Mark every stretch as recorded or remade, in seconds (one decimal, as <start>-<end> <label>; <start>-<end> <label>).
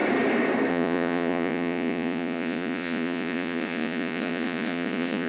0.0-0.7 recorded; 0.7-5.3 remade